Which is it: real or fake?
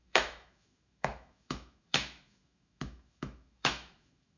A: fake